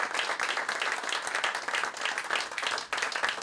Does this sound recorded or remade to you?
recorded